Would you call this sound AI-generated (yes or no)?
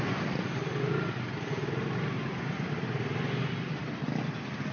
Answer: no